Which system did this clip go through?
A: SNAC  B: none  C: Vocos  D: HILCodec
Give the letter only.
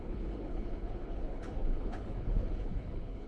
D